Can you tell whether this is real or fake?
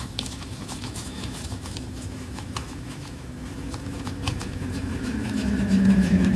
fake